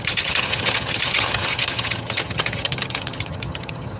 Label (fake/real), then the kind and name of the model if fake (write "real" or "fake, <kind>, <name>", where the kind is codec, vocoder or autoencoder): fake, vocoder, HiFi-GAN